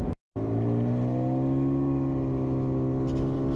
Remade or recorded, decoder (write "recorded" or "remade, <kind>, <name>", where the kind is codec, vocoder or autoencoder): recorded